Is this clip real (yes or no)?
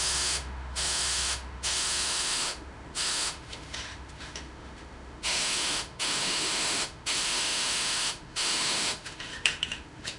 no